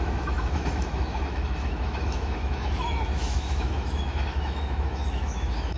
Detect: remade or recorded remade